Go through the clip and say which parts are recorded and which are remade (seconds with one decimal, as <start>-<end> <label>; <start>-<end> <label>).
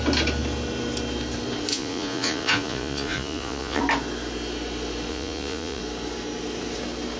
0.0-1.7 recorded; 1.7-3.8 remade; 3.8-5.1 recorded; 5.1-5.8 remade; 5.8-7.2 recorded